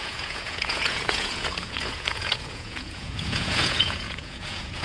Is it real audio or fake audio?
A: fake